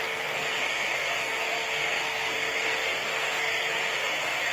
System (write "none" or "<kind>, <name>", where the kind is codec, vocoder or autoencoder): codec, SNAC